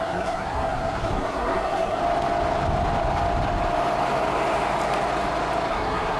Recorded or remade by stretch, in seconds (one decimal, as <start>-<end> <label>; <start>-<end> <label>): 0.0-2.0 remade; 2.0-5.7 recorded; 5.7-6.2 remade